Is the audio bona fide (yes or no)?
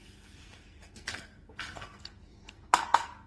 no